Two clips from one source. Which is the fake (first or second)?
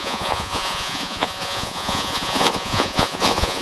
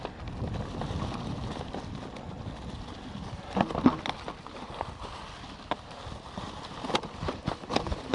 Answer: first